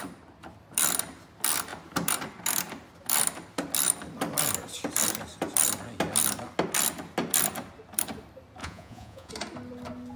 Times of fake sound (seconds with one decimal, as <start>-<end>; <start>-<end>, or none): 8.6-9.3